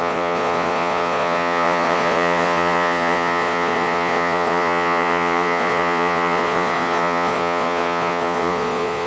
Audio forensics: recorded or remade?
remade